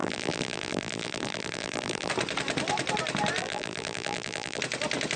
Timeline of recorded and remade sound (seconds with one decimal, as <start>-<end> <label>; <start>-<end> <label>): 0.0-2.1 remade; 2.1-3.4 recorded; 3.4-4.6 remade; 4.6-5.2 recorded